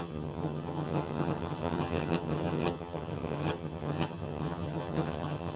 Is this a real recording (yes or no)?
no